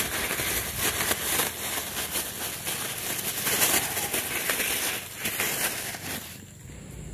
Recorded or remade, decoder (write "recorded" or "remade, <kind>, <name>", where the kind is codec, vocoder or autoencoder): recorded